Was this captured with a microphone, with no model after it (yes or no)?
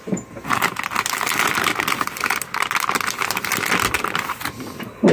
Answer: yes